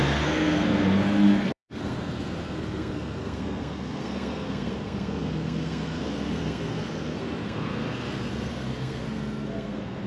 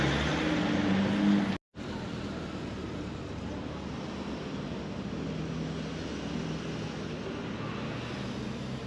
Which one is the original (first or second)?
second